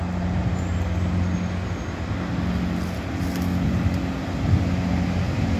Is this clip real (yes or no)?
yes